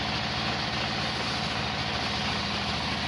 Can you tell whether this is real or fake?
real